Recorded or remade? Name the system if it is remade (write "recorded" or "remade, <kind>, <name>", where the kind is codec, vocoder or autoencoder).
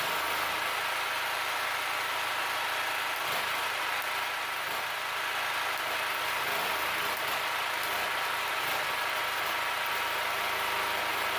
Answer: recorded